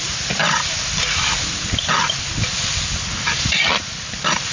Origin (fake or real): real